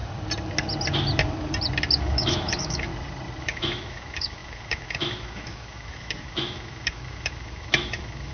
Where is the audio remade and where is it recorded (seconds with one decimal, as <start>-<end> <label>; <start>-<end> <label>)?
0.0-2.0 recorded; 2.0-2.9 remade; 2.9-3.4 recorded; 3.4-8.3 remade